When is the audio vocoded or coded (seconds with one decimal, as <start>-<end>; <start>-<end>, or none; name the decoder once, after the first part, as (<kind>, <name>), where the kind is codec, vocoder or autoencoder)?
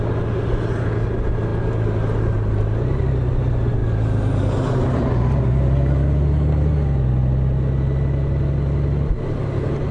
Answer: none